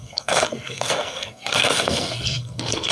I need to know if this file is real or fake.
fake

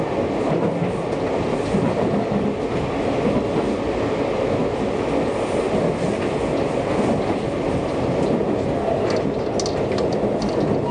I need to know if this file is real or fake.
real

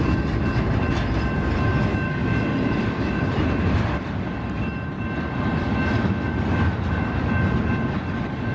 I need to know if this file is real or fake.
real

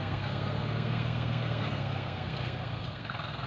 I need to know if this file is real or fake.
fake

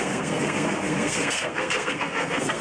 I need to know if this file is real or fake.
fake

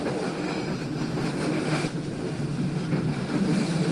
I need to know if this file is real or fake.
real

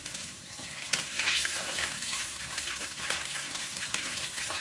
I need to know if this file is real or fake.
fake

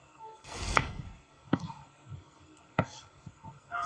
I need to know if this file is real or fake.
fake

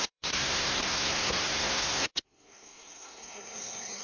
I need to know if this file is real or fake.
fake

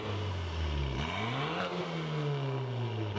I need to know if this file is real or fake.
real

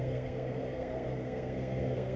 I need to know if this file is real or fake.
fake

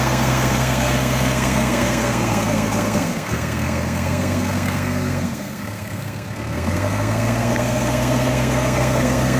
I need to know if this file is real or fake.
fake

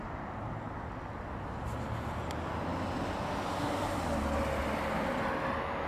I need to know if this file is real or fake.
real